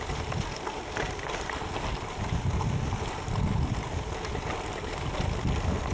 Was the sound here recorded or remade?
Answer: recorded